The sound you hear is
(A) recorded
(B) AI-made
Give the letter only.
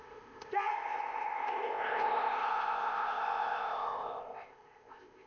B